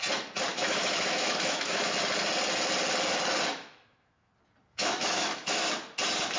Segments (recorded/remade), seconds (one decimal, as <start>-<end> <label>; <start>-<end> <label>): 0.0-0.5 recorded; 0.5-2.0 remade; 2.0-3.5 recorded; 3.5-4.3 remade; 4.3-4.7 recorded; 4.7-5.6 remade; 5.6-6.4 recorded